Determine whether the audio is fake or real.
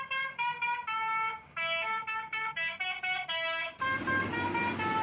real